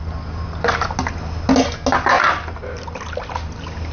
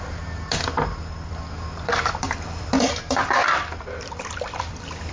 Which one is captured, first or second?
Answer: first